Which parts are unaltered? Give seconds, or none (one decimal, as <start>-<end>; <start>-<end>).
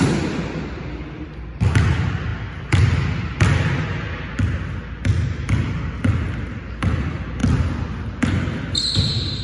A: 0.0-9.4